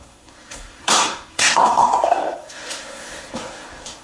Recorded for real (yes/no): no